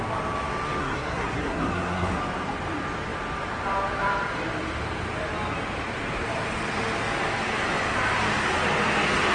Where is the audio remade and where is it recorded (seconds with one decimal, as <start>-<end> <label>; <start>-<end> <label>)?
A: 0.0-0.8 recorded; 0.8-2.2 remade; 2.2-9.3 recorded